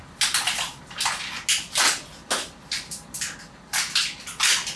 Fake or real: real